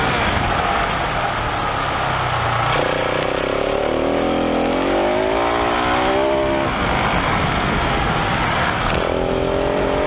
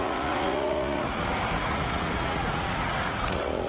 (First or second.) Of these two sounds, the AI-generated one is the second